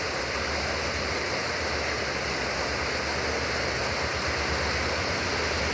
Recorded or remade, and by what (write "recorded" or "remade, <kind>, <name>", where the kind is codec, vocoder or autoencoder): recorded